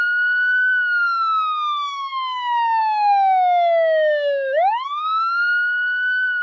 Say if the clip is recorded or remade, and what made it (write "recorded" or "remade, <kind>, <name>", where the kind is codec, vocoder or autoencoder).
remade, codec, DAC